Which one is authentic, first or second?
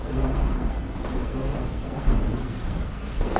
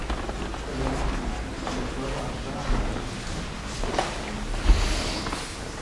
second